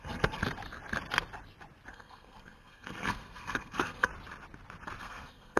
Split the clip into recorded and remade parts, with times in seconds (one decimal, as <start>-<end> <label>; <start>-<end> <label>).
0.0-0.4 remade; 0.4-1.9 recorded; 1.9-4.1 remade; 4.1-5.0 recorded; 5.0-5.6 remade